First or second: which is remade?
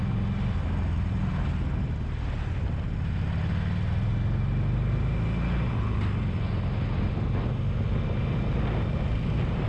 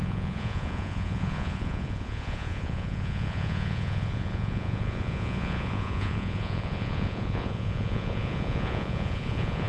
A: second